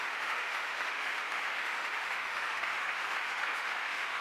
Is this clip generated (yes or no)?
yes